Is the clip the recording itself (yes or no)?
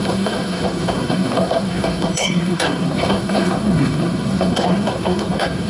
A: no